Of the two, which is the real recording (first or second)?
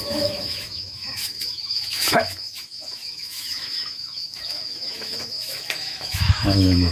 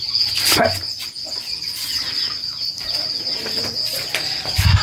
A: second